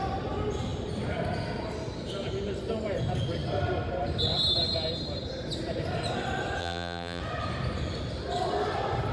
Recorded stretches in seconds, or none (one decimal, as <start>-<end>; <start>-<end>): 0.0-6.6; 7.2-9.1